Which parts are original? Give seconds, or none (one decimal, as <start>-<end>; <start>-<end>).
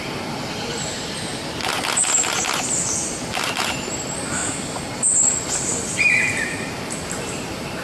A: 1.3-2.7; 4.4-5.4